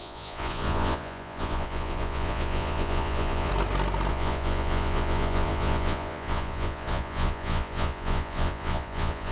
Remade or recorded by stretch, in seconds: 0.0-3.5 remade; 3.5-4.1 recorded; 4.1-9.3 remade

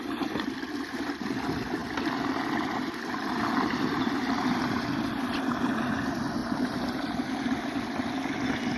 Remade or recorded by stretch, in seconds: 0.0-6.4 recorded; 6.4-7.1 remade; 7.1-8.8 recorded